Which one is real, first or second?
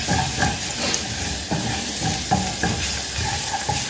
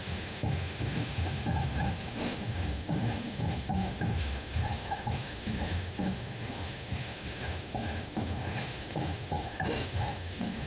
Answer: first